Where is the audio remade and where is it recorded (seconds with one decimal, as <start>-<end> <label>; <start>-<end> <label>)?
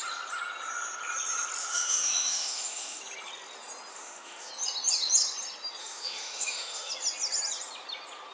0.0-1.6 recorded; 1.6-3.0 remade; 3.0-3.9 recorded; 3.9-4.5 remade; 4.5-5.8 recorded; 5.8-6.9 remade; 6.9-8.3 recorded